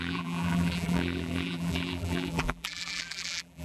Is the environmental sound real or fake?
fake